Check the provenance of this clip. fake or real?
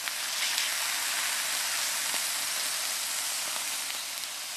real